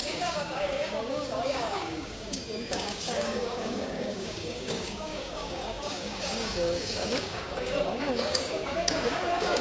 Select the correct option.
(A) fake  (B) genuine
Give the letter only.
A